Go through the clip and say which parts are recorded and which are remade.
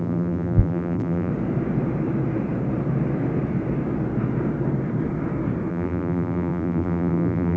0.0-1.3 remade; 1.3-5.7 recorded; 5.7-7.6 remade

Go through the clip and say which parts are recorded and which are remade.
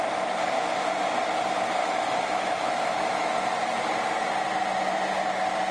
0.0-1.8 recorded; 1.8-3.3 remade; 3.3-5.7 recorded